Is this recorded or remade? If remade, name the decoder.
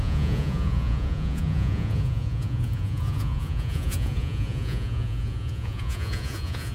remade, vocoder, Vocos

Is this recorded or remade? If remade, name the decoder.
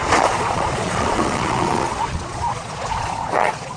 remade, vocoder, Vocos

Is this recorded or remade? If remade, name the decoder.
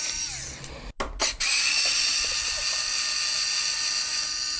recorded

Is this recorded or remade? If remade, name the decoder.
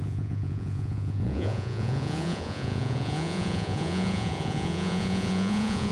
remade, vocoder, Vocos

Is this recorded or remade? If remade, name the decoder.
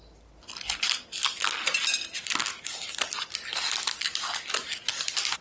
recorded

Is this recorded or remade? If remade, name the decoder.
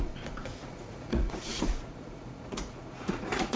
remade, vocoder, Vocos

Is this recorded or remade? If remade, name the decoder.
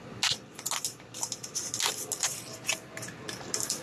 recorded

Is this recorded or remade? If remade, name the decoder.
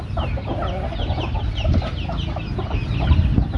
recorded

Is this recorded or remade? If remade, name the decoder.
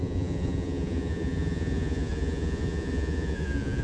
remade, vocoder, Vocos